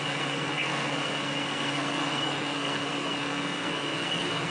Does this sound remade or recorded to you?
remade